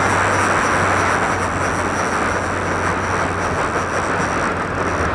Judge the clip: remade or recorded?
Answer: recorded